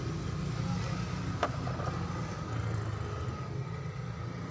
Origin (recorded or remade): recorded